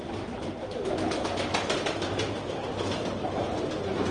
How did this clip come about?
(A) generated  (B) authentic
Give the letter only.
B